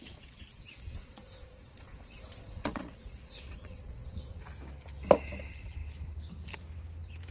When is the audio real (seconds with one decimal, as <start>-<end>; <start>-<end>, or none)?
4.4-7.3